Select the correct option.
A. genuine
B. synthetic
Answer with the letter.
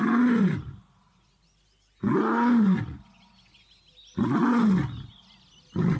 A